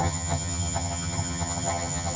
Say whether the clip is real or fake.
fake